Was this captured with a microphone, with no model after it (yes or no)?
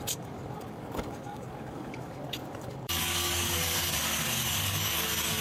no